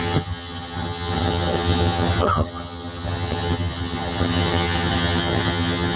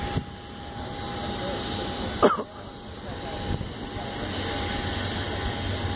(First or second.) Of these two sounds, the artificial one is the first